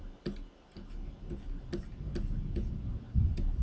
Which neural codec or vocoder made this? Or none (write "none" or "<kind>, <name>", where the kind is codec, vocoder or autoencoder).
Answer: none